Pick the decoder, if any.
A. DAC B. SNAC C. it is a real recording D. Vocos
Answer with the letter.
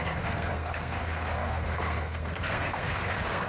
B